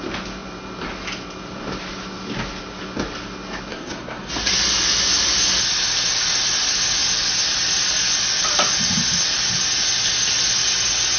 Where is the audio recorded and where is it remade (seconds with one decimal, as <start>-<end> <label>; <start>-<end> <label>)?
0.0-3.7 recorded; 3.7-4.3 remade; 4.3-11.2 recorded